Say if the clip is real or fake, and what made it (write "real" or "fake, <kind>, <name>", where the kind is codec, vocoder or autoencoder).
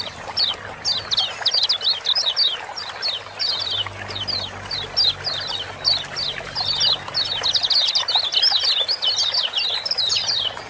real